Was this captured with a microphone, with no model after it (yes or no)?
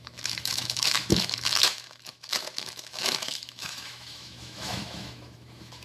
no